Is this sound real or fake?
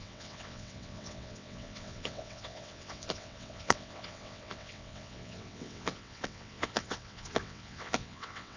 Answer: fake